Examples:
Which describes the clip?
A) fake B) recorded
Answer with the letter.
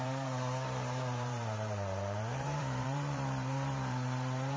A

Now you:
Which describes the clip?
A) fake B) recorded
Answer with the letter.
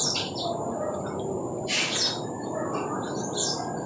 B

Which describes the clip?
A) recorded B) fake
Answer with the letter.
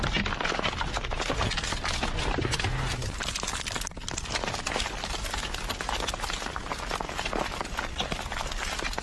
A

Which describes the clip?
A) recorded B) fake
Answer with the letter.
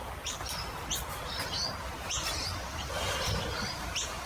A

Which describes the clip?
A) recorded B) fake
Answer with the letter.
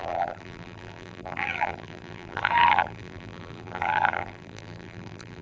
B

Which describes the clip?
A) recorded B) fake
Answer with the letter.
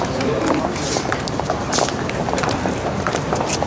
B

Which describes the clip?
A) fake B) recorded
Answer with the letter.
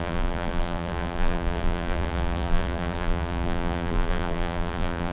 A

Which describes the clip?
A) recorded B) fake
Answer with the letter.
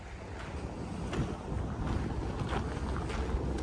A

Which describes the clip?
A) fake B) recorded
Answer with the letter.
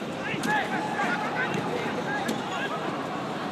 A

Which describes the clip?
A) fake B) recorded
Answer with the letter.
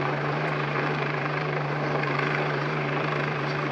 A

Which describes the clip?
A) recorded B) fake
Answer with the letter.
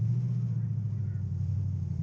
A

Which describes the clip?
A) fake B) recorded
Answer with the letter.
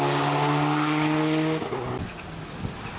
B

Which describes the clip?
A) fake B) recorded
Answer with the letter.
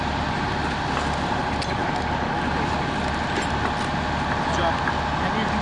B